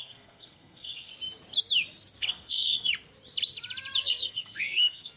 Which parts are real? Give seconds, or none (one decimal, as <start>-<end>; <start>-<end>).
1.1-2.3; 2.9-4.0